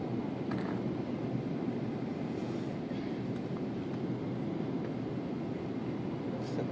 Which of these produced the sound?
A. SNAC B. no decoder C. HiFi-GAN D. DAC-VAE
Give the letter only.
B